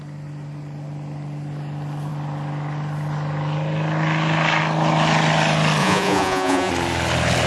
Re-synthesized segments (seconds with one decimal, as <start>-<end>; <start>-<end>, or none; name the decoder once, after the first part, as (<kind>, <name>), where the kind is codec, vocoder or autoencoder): 5.8-6.7 (vocoder, Vocos)